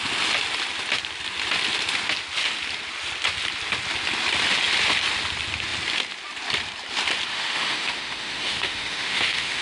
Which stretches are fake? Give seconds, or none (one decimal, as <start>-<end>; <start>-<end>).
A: 7.3-9.6